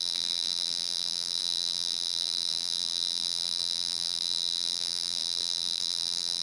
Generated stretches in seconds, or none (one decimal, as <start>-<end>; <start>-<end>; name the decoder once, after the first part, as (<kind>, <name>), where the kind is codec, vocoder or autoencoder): 0.0-6.4 (vocoder, BigVGAN v2)